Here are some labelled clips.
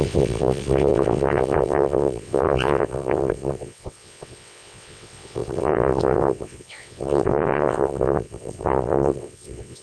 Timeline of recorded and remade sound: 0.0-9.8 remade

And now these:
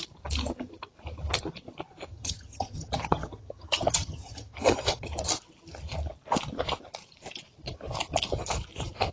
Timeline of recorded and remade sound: 0.0-2.1 recorded; 2.1-5.1 remade; 5.1-9.1 recorded

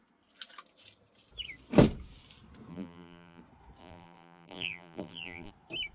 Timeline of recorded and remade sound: 0.0-2.7 recorded; 2.7-3.4 remade; 3.4-3.8 recorded; 3.8-5.5 remade; 5.5-5.9 recorded

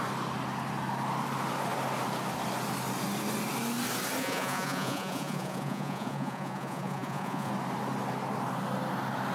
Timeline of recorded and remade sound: 0.0-4.2 recorded; 4.2-7.5 remade; 7.5-9.3 recorded

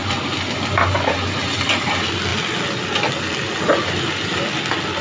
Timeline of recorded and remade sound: 0.0-5.0 recorded

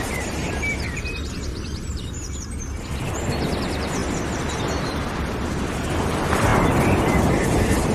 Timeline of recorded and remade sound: 0.0-1.5 recorded; 1.5-2.6 remade; 2.6-4.0 recorded; 4.0-5.2 remade; 5.2-7.9 recorded

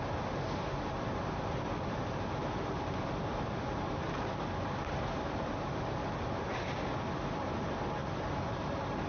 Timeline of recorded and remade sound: 0.0-8.0 recorded; 8.0-9.1 remade

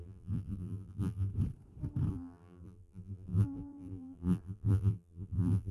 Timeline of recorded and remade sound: 0.0-1.3 remade; 1.3-2.1 recorded; 2.1-5.7 remade